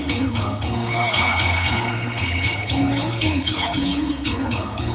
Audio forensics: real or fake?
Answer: fake